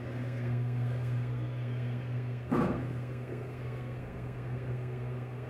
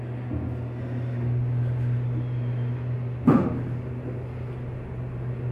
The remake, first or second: first